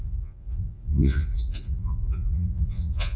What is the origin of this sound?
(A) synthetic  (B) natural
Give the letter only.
A